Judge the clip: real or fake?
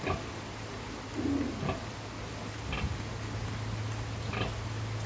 real